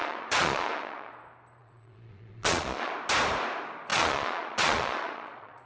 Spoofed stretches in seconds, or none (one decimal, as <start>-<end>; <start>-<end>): 0.0-1.1; 1.6-2.9; 3.9-5.7